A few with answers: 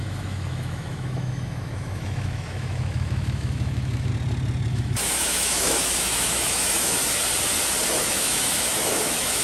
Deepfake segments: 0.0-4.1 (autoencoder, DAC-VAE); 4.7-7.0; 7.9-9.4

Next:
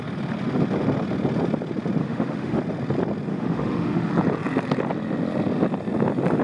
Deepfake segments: 2.0-2.6 (autoencoder, DAC-VAE); 3.3-4.1

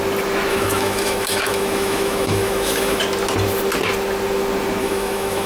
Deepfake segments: 0.5-3.0 (autoencoder, DAC-VAE); 4.8-5.5

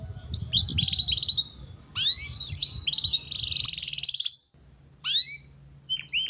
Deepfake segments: none